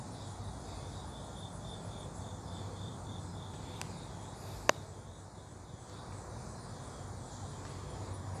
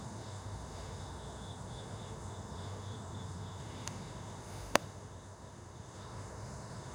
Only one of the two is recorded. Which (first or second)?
first